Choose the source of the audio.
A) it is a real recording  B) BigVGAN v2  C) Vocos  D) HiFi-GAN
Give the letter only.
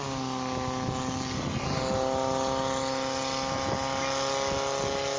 A